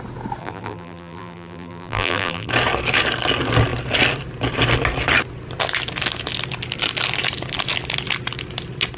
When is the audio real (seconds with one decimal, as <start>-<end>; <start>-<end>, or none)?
0.0-0.4; 2.5-9.0